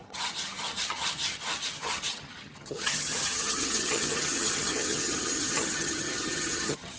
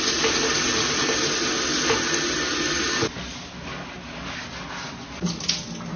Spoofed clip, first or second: first